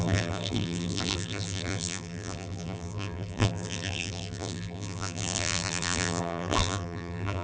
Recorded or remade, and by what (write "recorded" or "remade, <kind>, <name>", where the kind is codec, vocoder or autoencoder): remade, vocoder, BigVGAN v2